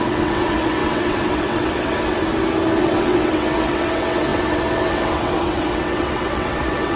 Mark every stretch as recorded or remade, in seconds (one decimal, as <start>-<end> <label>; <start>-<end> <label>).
0.0-2.2 remade; 2.2-2.8 recorded; 2.8-7.0 remade